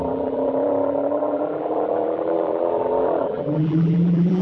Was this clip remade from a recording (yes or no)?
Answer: yes